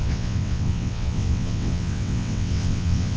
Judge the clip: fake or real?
fake